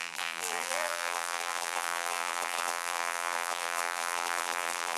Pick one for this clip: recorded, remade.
remade